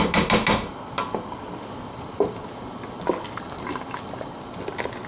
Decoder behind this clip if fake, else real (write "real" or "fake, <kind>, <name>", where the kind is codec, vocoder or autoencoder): real